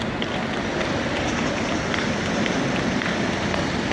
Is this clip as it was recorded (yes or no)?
yes